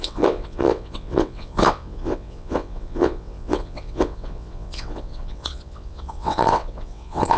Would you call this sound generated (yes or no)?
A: yes